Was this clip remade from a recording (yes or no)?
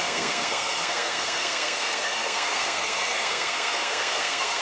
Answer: yes